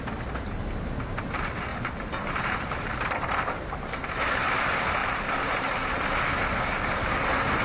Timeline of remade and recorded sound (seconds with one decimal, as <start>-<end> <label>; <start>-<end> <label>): 0.0-1.7 recorded; 1.7-4.1 remade; 4.1-5.0 recorded; 5.0-6.5 remade; 6.5-7.6 recorded